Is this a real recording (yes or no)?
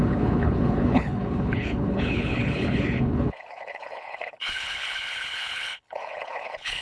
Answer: no